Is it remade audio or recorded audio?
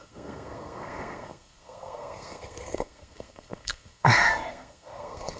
remade